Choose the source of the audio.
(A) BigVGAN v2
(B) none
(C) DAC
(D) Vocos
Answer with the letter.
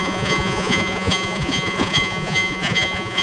D